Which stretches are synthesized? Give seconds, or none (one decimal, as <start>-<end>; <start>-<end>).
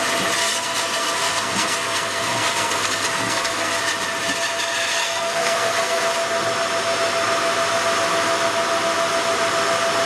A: 0.4-3.8; 4.9-6.0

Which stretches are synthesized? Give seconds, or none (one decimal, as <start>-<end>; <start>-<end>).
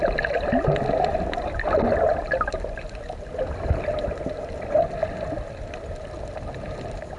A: none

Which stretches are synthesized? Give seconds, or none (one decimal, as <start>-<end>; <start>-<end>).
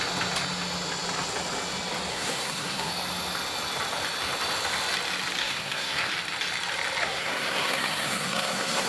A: 2.1-2.9; 5.4-6.1; 7.0-8.9